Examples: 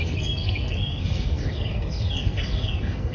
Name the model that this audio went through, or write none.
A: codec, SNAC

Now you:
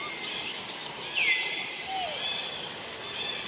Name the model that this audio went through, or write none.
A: none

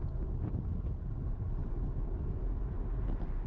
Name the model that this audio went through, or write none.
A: none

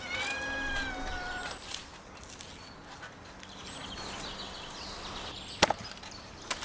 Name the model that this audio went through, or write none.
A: none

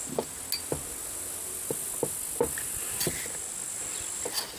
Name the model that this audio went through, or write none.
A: none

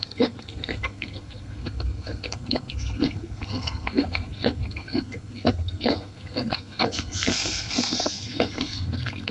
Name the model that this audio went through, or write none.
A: codec, SNAC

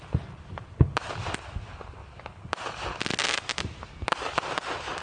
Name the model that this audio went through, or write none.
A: none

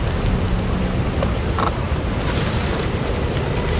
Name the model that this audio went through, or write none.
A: none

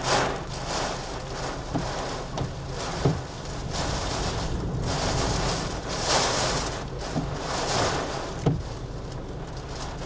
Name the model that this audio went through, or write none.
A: none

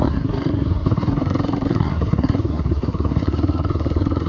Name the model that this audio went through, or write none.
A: codec, SNAC